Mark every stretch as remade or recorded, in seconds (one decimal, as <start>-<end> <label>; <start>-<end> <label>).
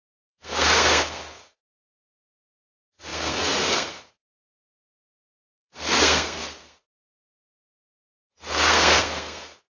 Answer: 0.0-9.7 remade